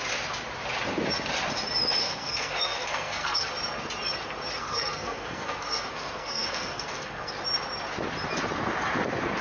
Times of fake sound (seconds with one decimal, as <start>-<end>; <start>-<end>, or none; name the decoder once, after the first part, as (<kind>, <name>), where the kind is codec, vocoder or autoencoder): 2.0-3.5 (codec, SNAC); 4.6-7.3